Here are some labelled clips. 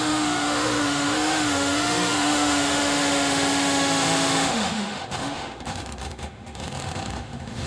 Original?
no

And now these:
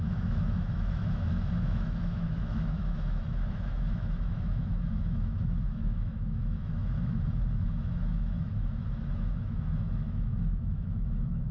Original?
no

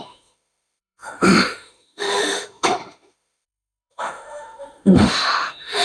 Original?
no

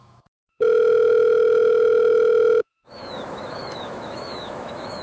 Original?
no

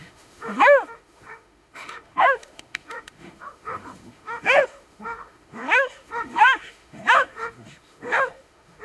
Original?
no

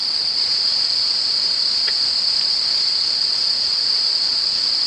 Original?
yes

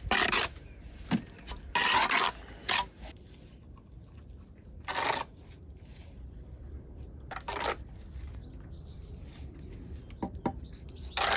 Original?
yes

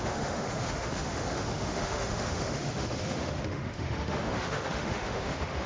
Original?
no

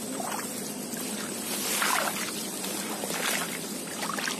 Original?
yes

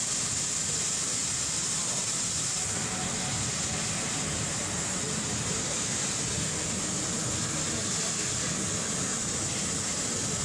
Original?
yes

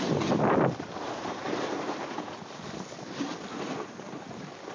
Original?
yes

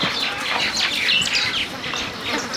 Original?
yes